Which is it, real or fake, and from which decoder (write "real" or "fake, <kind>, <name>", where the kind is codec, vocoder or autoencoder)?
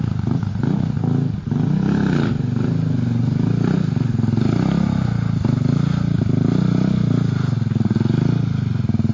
real